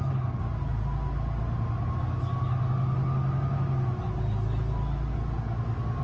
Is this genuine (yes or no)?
yes